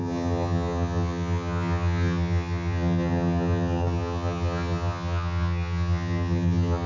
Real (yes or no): no